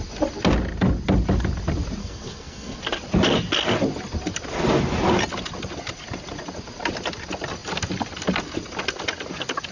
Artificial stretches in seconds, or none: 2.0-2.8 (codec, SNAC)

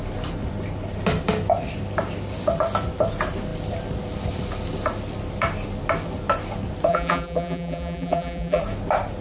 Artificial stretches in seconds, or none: 6.9-8.6 (vocoder, BigVGAN v2)

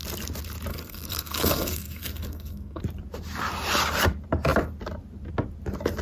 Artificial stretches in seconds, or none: 0.7-2.8 (codec, SNAC)

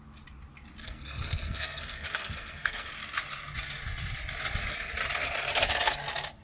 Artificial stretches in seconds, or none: 0.8-2.9 (codec, SNAC)